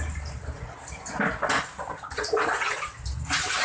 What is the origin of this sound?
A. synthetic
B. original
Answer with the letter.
B